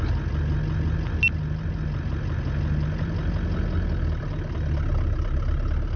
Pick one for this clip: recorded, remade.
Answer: recorded